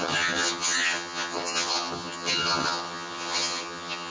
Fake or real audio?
fake